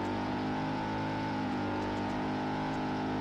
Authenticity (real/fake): fake